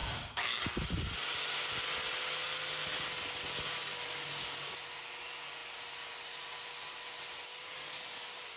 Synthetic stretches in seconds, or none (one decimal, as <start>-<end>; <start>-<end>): 0.0-0.6